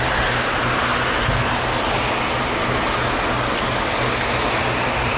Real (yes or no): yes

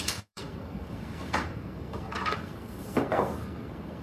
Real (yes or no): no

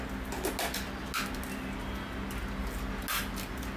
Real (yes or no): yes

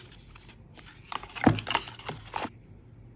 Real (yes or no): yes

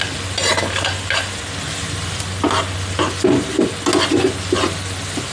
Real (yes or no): yes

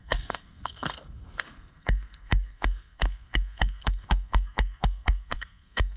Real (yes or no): no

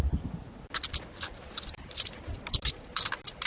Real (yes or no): yes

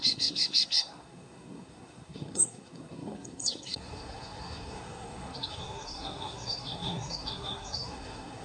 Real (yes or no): no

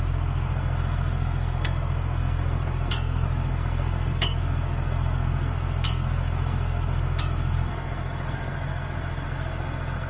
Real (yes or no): no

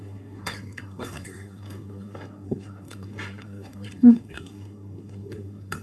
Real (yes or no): no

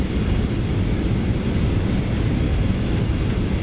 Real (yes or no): yes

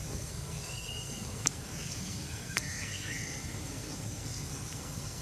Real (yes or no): no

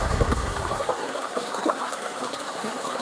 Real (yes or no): no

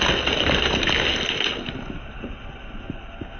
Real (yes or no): yes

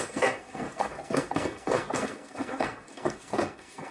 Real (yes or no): no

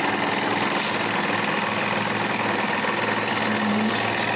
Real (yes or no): yes